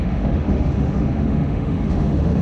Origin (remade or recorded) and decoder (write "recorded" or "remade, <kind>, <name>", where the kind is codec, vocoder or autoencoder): remade, autoencoder, DAC-VAE